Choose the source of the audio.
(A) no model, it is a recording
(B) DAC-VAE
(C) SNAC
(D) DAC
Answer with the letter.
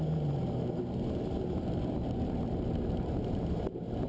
A